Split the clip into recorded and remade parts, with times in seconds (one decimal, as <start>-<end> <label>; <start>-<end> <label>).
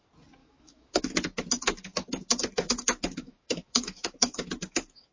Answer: 0.0-0.4 recorded; 0.4-1.0 remade; 1.0-2.4 recorded; 2.4-5.1 remade